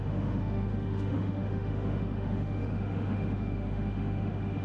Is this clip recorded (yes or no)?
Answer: no